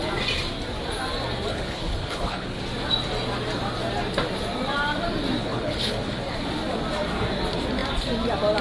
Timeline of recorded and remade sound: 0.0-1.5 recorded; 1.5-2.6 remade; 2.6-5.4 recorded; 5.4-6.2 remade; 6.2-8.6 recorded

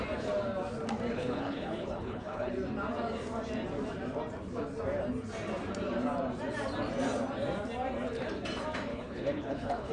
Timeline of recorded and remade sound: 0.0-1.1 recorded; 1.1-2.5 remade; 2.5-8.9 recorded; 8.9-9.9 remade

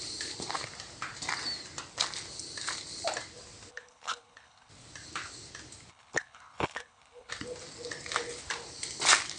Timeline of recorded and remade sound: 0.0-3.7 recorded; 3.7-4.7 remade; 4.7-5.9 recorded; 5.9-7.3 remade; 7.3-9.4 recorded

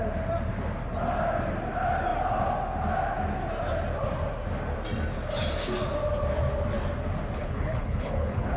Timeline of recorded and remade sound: 0.0-7.4 recorded; 7.4-8.6 remade